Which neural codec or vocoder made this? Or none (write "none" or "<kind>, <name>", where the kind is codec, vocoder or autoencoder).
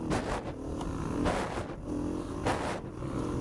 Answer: none